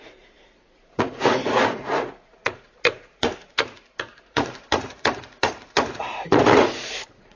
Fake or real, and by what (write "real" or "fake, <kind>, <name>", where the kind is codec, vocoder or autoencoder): fake, vocoder, Vocos